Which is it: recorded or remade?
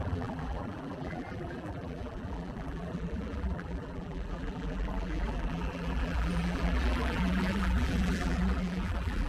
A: remade